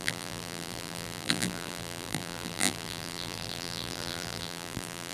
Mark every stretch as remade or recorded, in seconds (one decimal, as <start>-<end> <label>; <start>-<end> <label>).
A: 0.0-5.1 remade